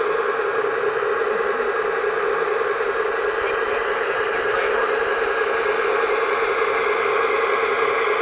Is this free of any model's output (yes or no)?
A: yes